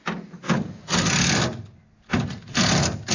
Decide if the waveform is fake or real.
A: real